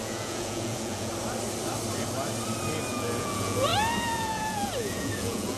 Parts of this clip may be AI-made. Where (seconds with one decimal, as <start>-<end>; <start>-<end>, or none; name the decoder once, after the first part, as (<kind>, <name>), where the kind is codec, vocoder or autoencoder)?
0.0-1.1 (vocoder, Vocos); 2.9-5.6